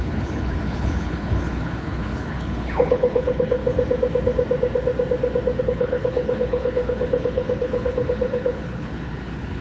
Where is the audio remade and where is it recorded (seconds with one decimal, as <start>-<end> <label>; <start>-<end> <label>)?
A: 0.0-3.6 remade; 3.6-5.6 recorded; 5.6-9.6 remade